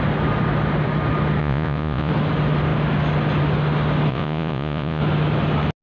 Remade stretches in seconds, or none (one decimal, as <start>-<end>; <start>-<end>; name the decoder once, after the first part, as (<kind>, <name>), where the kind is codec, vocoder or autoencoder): 1.4-2.1 (vocoder, Vocos); 4.1-5.0